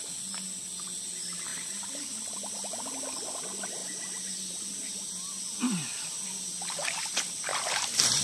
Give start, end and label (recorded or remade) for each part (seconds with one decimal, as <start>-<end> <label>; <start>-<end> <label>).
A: 0.0-1.5 recorded; 1.5-2.0 remade; 2.0-7.5 recorded; 7.5-8.2 remade